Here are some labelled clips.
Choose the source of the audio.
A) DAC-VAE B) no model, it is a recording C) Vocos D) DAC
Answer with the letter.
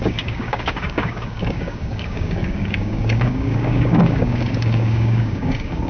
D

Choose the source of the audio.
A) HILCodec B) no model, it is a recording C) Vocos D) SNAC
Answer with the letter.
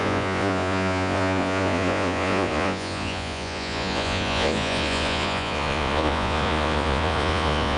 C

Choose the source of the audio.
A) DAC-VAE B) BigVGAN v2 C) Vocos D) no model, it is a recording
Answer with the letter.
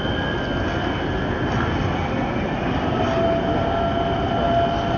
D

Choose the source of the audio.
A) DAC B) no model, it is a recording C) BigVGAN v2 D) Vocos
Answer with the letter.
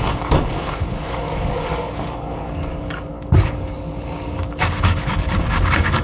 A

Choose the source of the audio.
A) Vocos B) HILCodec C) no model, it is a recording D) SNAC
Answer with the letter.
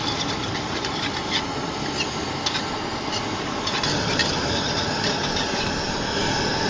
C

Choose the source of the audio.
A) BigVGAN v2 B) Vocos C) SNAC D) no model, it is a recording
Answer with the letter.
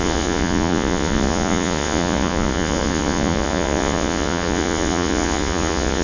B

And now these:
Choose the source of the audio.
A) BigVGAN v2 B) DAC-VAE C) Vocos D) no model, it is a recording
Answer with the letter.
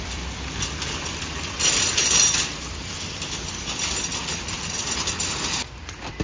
A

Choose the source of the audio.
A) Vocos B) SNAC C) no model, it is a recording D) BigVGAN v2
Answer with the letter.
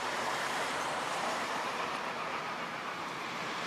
D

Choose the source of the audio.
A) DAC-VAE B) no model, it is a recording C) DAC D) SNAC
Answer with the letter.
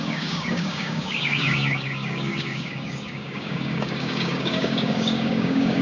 C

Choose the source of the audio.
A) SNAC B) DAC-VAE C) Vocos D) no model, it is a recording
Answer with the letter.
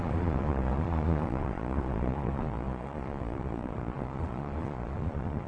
C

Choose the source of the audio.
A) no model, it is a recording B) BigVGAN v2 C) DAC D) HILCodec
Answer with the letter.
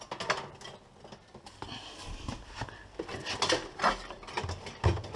A